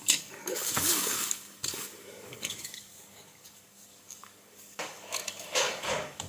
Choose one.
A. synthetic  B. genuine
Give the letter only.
A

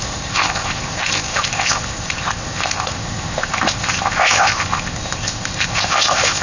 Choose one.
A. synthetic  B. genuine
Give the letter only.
A